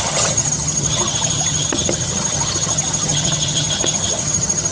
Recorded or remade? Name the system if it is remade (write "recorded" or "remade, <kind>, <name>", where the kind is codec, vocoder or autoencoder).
remade, vocoder, HiFi-GAN